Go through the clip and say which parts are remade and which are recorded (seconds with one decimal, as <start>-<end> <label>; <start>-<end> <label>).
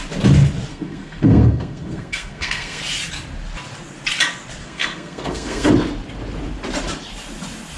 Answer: 0.0-0.7 recorded; 0.7-2.8 remade; 2.8-4.6 recorded; 4.6-5.7 remade; 5.7-7.8 recorded